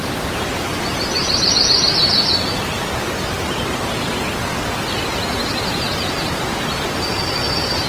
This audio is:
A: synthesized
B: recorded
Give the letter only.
B